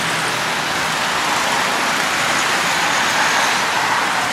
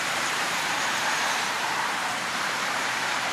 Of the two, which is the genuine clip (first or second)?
first